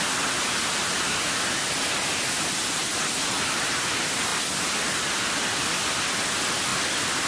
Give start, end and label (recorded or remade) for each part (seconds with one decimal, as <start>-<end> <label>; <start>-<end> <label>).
0.0-7.3 recorded